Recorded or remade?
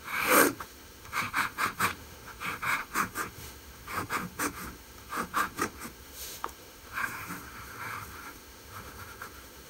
remade